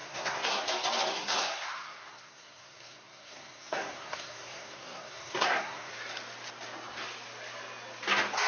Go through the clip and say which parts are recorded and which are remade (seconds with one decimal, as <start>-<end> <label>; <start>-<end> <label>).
0.0-0.6 remade; 0.6-1.1 recorded; 1.1-5.9 remade; 5.9-8.5 recorded